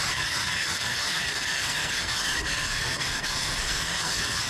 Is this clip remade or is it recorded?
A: remade